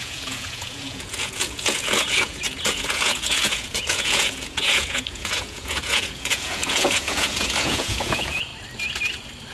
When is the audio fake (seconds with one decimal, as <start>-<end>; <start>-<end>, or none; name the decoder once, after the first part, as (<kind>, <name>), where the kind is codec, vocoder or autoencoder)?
0.0-8.5 (vocoder, Vocos)